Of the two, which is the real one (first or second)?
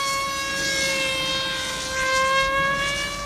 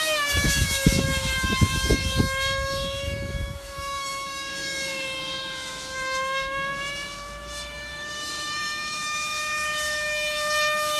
first